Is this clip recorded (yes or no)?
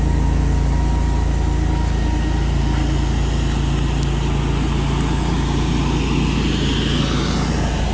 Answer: yes